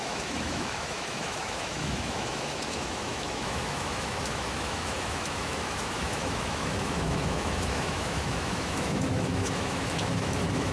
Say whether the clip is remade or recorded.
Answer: remade